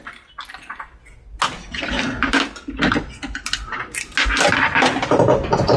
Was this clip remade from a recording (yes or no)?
no